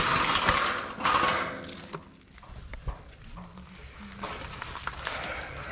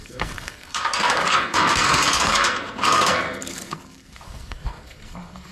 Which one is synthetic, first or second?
second